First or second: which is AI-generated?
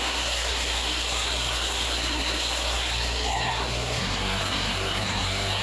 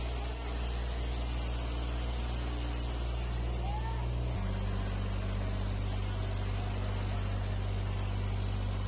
first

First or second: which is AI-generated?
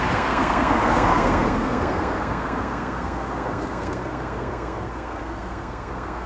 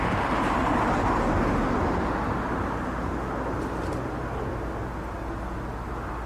first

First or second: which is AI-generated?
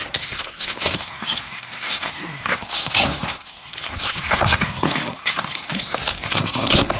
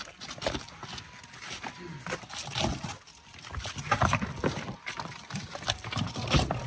first